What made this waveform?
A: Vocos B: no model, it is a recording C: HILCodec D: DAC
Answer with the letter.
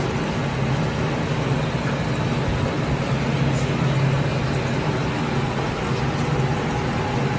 B